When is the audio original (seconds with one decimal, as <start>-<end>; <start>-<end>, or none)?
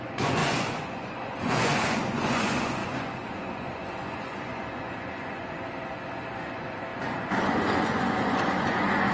none